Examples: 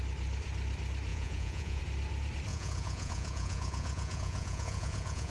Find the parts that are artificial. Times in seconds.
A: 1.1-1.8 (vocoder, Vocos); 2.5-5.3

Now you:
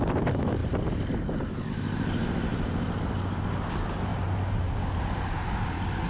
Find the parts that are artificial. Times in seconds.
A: 2.5-3.1 (vocoder, BigVGAN v2); 4.1-4.8